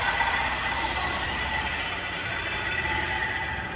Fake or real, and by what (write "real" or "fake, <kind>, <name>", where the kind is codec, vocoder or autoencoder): fake, vocoder, BigVGAN v2